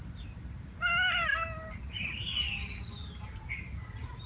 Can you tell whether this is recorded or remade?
recorded